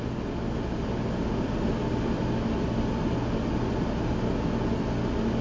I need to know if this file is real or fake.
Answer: real